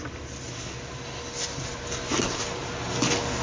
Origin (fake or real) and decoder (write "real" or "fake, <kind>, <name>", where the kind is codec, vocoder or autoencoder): real